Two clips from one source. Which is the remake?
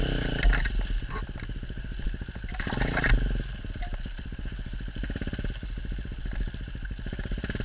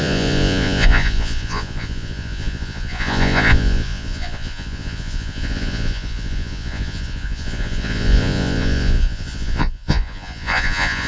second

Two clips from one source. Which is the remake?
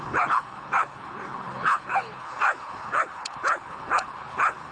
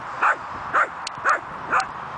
first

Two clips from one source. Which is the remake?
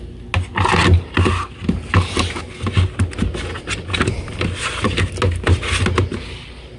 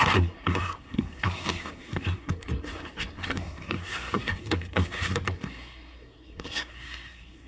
second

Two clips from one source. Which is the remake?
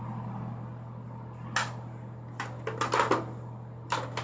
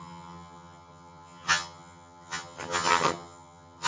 second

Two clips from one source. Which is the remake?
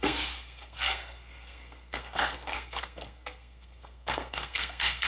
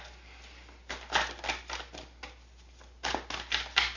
first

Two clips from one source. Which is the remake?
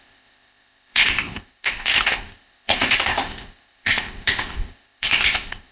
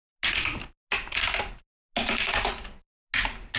first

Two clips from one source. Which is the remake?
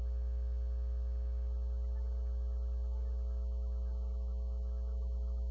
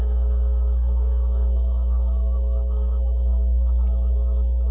second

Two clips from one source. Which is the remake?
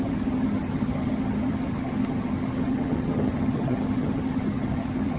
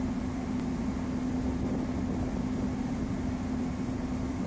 first